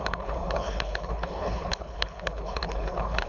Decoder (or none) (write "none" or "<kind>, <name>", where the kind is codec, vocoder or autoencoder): codec, HILCodec